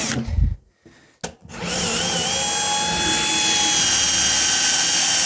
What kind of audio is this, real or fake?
real